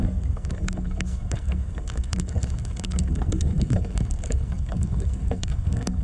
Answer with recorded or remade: remade